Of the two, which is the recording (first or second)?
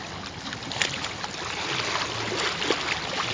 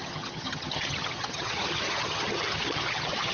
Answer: first